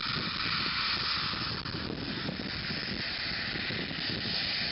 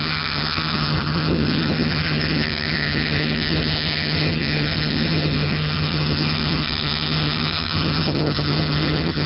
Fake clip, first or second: second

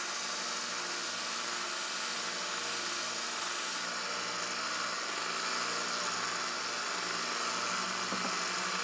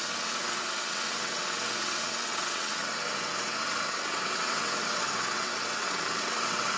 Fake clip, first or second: second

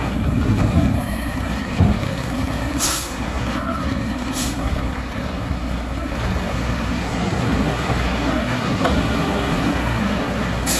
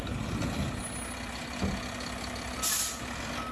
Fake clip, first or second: first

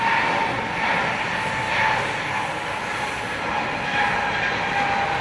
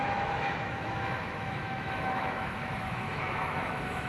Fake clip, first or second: second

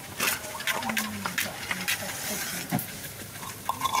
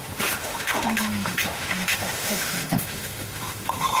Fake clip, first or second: second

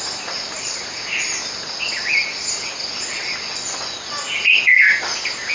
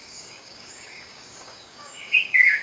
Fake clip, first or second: second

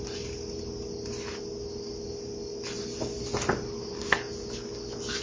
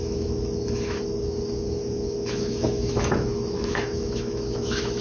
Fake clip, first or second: second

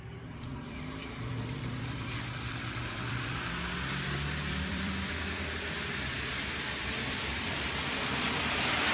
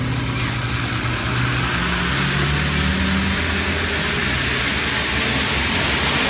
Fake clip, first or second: first